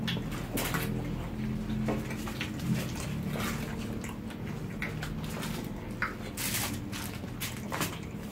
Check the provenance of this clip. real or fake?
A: real